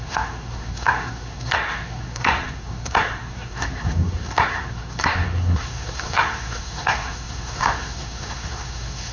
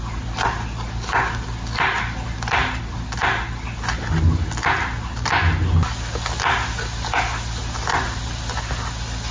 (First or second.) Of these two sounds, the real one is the second